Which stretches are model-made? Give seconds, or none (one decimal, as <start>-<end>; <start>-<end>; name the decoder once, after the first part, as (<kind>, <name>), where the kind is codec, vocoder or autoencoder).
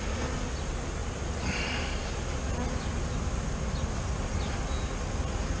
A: none